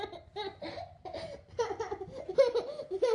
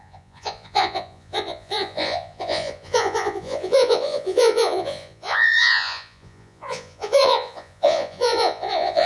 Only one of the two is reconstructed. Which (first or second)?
second